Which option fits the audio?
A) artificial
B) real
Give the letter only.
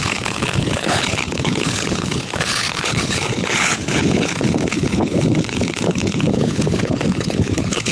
A